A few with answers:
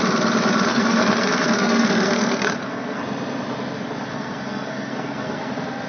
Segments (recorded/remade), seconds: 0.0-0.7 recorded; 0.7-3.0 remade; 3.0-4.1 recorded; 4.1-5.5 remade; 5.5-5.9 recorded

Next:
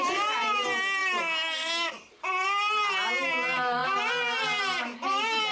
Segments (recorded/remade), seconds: 0.0-5.5 recorded

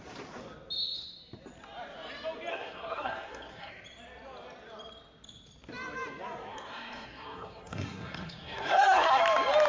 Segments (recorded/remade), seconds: 0.0-2.5 recorded; 2.5-3.7 remade; 3.7-6.5 recorded; 6.5-9.2 remade; 9.2-9.7 recorded

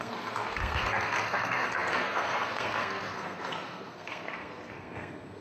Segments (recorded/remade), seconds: 0.0-5.4 remade